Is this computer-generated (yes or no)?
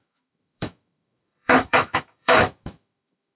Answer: yes